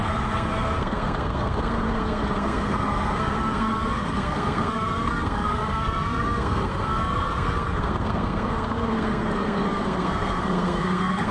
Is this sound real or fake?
fake